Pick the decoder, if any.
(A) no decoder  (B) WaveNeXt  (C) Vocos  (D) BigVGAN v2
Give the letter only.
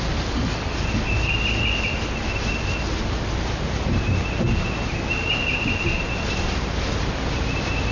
A